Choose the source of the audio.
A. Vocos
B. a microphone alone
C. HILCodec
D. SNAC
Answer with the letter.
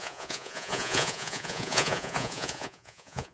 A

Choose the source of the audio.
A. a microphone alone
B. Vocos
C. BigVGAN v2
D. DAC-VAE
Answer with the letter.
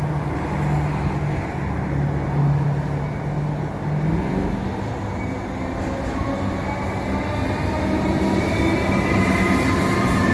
A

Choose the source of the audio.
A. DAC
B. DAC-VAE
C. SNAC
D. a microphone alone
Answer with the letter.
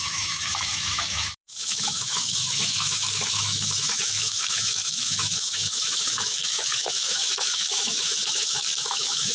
B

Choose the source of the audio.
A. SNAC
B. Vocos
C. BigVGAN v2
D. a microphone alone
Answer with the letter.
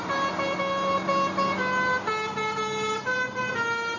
D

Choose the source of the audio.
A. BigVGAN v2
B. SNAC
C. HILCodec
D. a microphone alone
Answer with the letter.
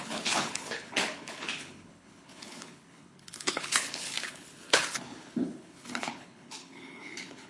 C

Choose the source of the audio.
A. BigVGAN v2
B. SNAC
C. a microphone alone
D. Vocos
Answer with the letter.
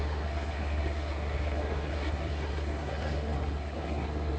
B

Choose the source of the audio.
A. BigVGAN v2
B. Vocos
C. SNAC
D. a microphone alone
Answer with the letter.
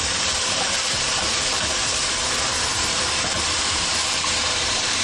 A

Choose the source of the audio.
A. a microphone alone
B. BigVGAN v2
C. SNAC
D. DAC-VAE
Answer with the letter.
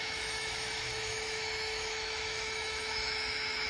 D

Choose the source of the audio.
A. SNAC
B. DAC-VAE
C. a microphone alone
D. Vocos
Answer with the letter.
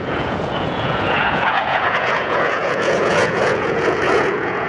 D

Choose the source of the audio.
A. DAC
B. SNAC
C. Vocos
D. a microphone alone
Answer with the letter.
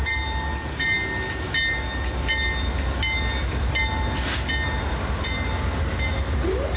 D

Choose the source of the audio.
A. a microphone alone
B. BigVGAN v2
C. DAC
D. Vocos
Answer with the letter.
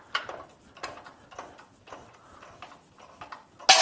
A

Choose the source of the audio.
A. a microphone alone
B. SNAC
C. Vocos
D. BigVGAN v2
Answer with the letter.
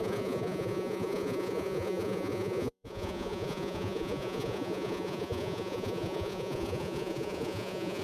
C